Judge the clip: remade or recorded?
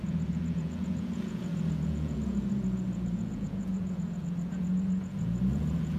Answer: remade